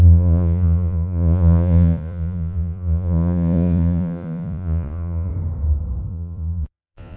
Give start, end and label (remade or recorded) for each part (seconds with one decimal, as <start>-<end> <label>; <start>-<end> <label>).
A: 0.0-5.3 remade; 5.3-6.1 recorded; 6.1-7.2 remade